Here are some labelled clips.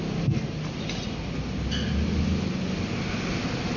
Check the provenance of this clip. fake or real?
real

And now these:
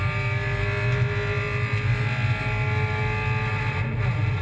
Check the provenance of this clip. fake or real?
real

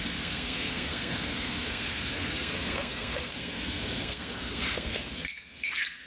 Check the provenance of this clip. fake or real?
fake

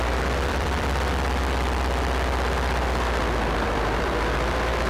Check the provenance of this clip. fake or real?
fake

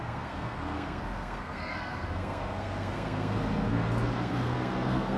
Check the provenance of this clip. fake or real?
fake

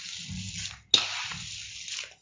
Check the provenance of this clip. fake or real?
real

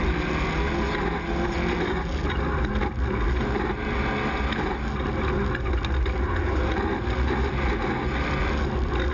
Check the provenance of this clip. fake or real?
real